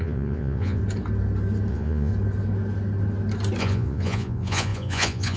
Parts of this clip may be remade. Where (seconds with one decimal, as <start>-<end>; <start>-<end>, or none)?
0.0-0.8; 1.7-2.1; 3.6-5.4